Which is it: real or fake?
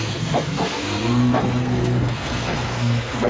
fake